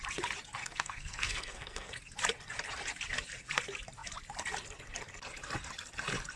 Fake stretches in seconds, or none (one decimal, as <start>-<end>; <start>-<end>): 0.6-1.9